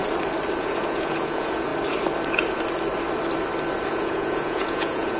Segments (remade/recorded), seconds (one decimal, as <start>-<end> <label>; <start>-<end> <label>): 0.0-0.6 recorded; 0.6-1.7 remade; 1.7-3.9 recorded; 3.9-5.2 remade